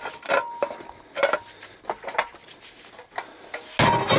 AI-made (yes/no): no